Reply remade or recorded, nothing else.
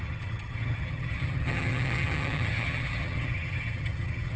remade